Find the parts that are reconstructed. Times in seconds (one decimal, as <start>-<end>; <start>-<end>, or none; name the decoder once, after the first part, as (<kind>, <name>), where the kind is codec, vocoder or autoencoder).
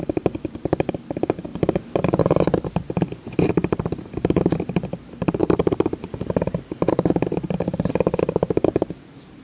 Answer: 0.0-9.4 (vocoder, BigVGAN v2)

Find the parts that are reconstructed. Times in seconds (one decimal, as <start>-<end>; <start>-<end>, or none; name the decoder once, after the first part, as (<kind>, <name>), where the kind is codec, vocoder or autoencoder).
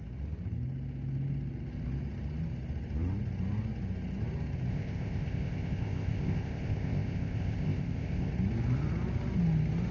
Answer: 4.7-8.3 (codec, ZipCodec)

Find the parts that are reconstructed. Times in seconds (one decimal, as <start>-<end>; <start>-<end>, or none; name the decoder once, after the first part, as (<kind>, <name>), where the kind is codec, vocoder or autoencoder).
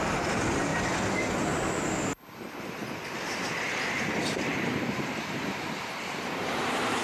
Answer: 0.0-0.7 (vocoder, BigVGAN v2); 2.7-7.0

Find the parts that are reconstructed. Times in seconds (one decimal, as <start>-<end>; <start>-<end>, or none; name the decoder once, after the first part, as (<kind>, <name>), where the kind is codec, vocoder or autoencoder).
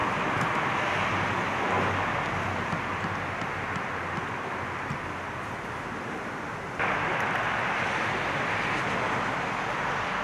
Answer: none